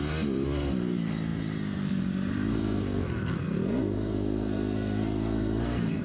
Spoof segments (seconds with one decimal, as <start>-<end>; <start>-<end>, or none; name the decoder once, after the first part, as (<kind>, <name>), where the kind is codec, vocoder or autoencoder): 2.5-6.0 (codec, SNAC)